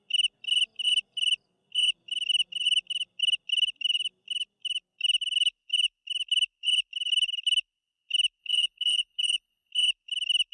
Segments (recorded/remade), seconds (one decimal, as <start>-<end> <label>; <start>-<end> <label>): 0.0-8.4 recorded; 8.4-9.7 remade; 9.7-10.5 recorded